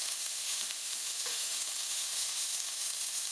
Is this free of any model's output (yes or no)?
no